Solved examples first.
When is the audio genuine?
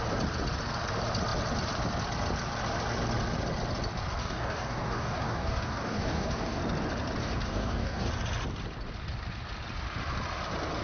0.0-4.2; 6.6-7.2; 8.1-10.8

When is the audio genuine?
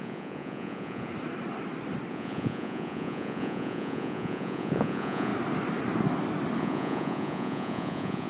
1.1-2.1; 5.3-6.6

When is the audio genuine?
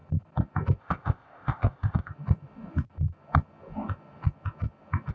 0.0-0.8; 2.1-5.1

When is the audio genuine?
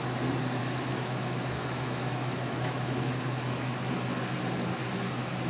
0.0-0.6; 3.9-5.5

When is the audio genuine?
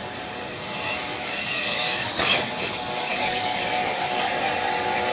0.0-1.1; 4.2-5.1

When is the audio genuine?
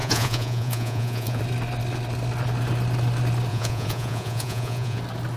1.4-3.5; 5.0-5.4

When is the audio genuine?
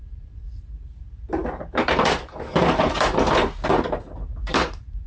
none